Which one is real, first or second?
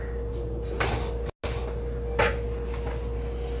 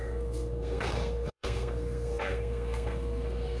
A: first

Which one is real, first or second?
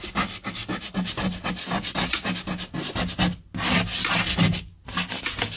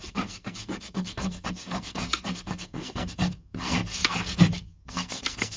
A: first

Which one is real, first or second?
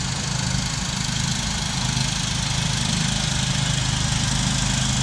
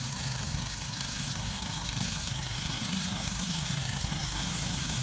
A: first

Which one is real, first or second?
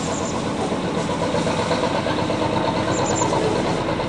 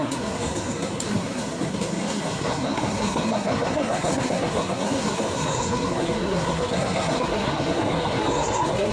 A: first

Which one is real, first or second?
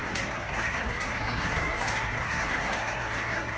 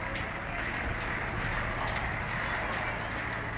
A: second